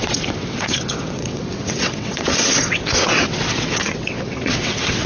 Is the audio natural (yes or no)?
no